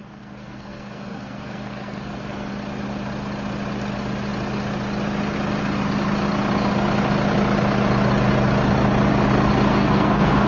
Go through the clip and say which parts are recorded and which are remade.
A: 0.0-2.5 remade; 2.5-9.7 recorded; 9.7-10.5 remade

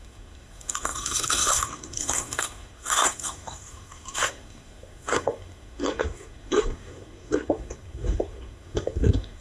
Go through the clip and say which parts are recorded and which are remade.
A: 0.0-9.4 remade

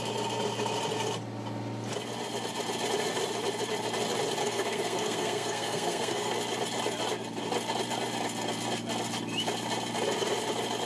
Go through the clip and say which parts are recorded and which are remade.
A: 0.0-4.4 recorded; 4.4-6.3 remade; 6.3-10.9 recorded

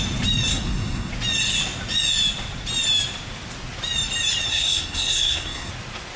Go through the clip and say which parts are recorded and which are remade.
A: 0.0-0.5 recorded; 0.5-1.1 remade; 1.1-4.5 recorded; 4.5-5.7 remade; 5.7-6.2 recorded

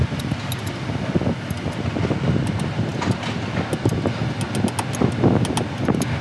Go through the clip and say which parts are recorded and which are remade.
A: 0.0-6.2 recorded